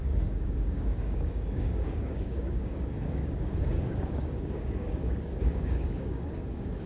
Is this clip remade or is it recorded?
remade